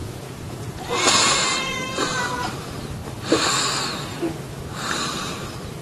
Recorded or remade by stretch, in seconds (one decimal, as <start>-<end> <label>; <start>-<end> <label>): 0.0-2.2 remade; 2.2-5.8 recorded